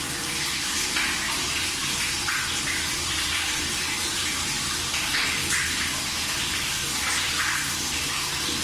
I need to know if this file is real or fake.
fake